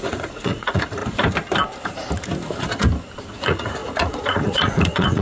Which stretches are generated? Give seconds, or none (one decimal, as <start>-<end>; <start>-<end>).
0.0-1.0; 3.3-5.2